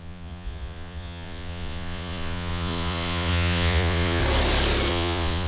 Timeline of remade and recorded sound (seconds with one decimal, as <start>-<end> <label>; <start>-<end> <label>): 0.0-4.2 remade; 4.2-4.9 recorded; 4.9-5.5 remade